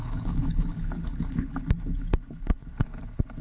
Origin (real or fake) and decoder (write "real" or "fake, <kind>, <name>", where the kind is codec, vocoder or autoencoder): fake, codec, HILCodec